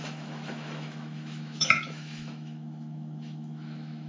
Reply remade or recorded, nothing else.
remade